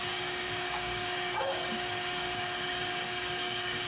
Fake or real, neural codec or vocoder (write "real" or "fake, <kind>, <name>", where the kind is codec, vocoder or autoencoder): fake, codec, DAC